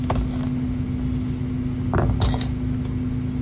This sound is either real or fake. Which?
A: real